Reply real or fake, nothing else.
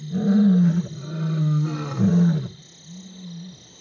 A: real